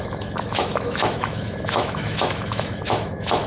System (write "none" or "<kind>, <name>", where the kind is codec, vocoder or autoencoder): autoencoder, DAC-VAE